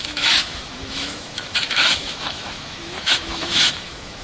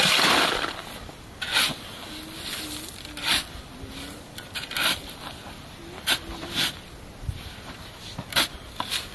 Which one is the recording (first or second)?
second